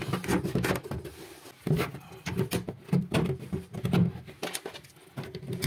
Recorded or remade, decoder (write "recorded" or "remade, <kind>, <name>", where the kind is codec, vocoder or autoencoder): recorded